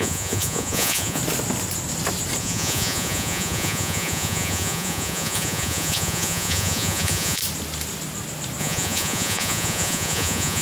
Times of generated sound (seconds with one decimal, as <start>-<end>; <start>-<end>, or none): 0.0-1.2; 2.4-7.4; 8.6-10.6